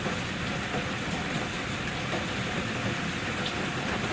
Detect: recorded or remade recorded